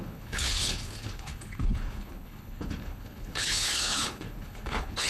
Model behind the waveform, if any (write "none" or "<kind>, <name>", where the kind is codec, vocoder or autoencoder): codec, HILCodec